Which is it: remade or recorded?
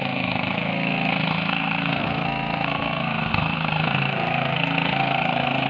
remade